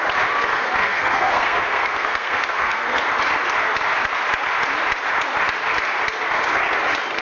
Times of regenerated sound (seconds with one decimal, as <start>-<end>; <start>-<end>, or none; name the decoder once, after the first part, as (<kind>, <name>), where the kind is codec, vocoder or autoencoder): 0.8-3.0 (codec, SNAC)